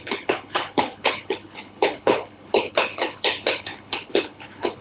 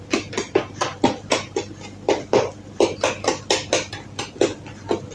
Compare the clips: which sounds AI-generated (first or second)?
first